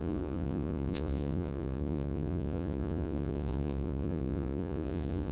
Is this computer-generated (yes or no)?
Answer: yes